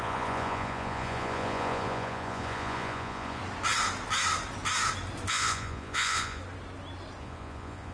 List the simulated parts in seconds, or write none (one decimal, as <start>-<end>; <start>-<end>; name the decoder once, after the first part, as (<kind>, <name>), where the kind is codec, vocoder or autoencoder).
0.0-3.4 (vocoder, Vocos); 5.3-6.4; 7.2-7.9

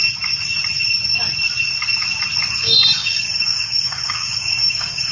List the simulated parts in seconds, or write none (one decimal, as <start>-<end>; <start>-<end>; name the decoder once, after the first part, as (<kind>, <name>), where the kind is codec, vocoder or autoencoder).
2.6-5.1 (codec, DAC)